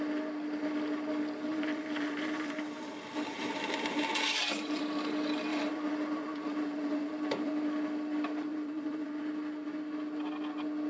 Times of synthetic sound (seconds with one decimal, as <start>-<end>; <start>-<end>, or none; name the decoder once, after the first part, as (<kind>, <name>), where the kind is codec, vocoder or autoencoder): 1.5-4.8 (vocoder, BigVGAN v2); 5.5-7.5; 8.5-9.2